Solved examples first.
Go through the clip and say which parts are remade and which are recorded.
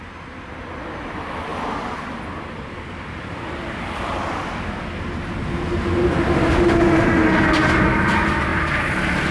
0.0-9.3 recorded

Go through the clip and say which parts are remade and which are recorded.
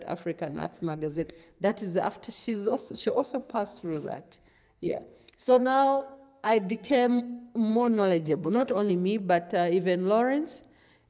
0.0-0.5 recorded; 0.5-1.7 remade; 1.7-2.4 recorded; 2.4-7.2 remade; 7.2-7.7 recorded; 7.7-8.9 remade; 8.9-11.1 recorded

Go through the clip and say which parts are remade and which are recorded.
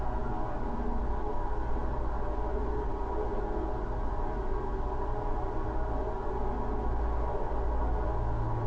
0.0-8.7 recorded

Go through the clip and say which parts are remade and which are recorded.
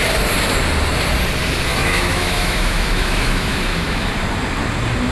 0.0-1.7 recorded; 1.7-4.1 remade; 4.1-5.1 recorded